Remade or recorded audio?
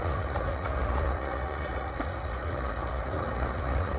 remade